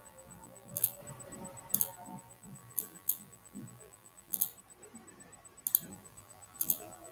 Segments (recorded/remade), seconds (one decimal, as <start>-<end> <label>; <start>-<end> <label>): 0.0-1.0 remade; 1.0-1.8 recorded; 1.8-4.5 remade; 4.5-5.9 recorded; 5.9-7.1 remade